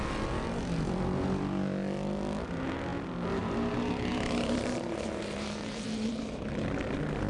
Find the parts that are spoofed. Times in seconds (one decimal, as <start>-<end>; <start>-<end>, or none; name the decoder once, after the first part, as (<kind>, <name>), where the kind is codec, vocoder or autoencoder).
4.1-7.3 (vocoder, BigVGAN v2)